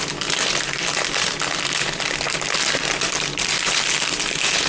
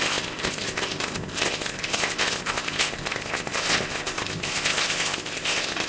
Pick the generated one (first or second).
second